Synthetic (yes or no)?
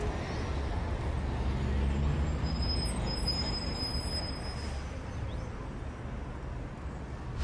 no